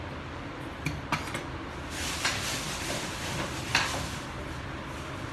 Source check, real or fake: real